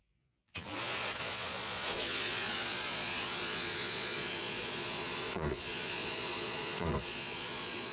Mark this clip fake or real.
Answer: fake